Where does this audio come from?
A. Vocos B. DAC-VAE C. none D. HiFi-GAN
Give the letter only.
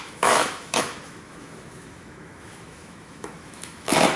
B